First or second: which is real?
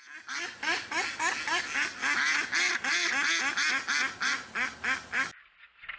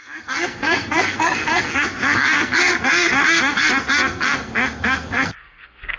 first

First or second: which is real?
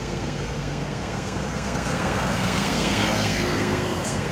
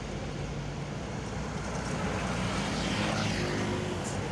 second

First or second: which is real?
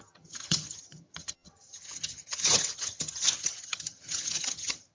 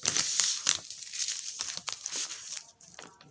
second